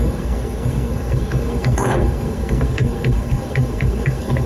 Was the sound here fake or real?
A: fake